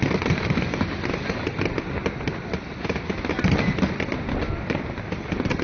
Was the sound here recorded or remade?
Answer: recorded